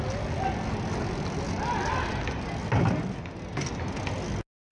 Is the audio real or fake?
real